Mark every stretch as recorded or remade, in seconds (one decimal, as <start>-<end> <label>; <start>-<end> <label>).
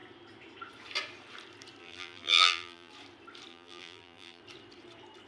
0.0-1.8 recorded; 1.8-2.9 remade; 2.9-3.5 recorded; 3.5-4.4 remade; 4.4-5.3 recorded